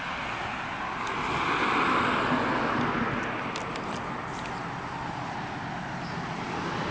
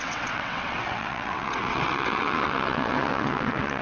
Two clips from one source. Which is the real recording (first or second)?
first